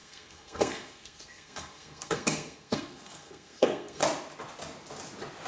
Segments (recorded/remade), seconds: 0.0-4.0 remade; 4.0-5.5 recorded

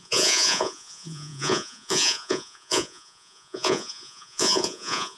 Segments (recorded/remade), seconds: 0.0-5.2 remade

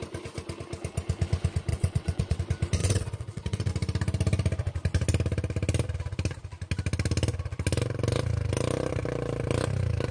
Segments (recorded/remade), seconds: 0.0-1.7 recorded; 1.7-2.4 remade; 2.4-2.8 recorded; 2.8-3.7 remade; 3.7-10.1 recorded